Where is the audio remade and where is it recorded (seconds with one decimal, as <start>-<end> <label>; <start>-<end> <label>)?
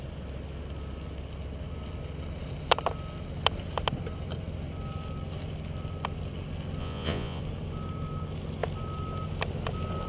0.0-6.8 recorded; 6.8-7.4 remade; 7.4-10.1 recorded